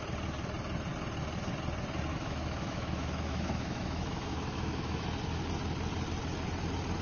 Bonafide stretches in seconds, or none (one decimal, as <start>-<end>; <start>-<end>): 0.0-2.1; 5.0-7.0